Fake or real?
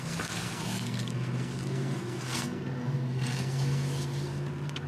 fake